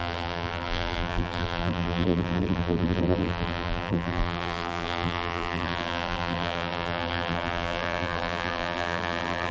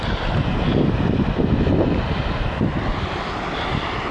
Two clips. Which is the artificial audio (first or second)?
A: first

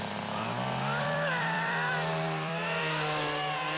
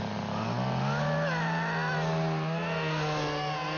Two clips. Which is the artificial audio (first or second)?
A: first